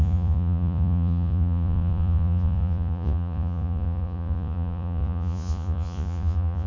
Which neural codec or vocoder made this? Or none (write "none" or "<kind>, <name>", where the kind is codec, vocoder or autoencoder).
vocoder, Vocos